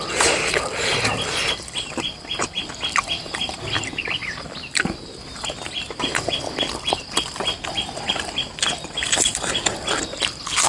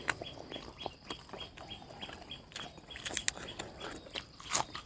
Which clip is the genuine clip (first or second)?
second